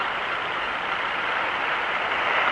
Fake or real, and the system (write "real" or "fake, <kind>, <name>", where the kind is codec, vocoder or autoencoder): real